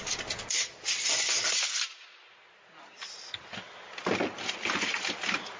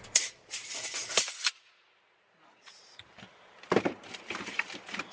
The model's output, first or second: second